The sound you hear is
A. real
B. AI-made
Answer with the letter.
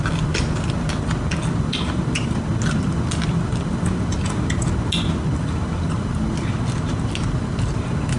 A